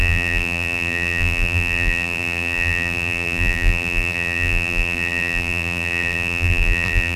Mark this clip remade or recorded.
remade